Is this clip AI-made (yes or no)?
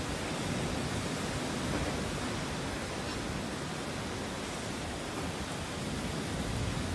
no